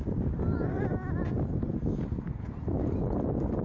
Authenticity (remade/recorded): recorded